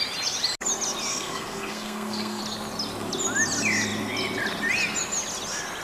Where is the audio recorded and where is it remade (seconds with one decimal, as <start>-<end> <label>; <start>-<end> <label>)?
0.0-1.1 recorded; 1.1-2.4 remade; 2.4-5.8 recorded